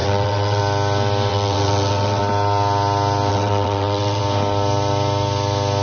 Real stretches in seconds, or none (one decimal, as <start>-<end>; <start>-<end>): 0.6-1.3; 2.2-3.3; 4.2-5.8